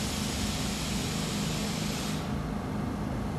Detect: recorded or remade recorded